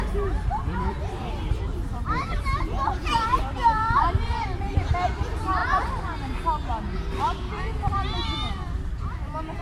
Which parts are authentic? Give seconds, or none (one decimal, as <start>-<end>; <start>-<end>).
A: 5.6-7.2